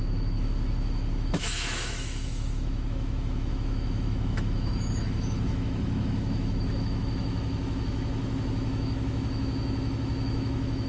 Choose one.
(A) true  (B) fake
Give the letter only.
B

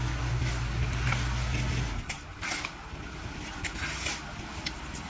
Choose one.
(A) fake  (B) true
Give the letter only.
B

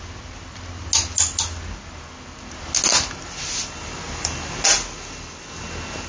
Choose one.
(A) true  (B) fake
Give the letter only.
A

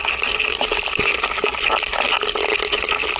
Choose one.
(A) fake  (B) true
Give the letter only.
B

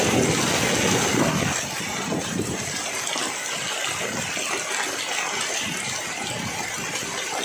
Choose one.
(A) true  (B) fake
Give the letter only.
A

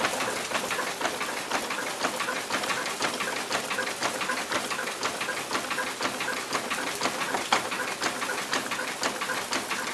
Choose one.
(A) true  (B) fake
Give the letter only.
A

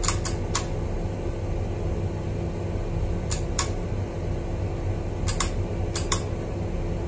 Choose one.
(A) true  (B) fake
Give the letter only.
A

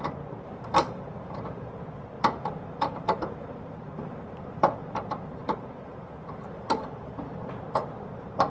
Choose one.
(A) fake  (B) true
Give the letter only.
A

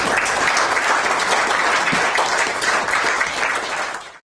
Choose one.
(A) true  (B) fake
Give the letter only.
A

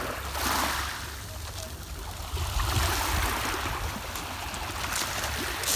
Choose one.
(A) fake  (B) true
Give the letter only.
B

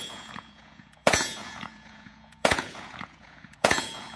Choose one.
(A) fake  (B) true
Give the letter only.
A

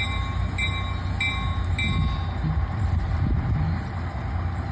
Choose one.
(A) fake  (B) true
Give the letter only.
B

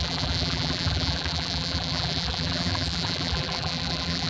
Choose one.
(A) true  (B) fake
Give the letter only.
B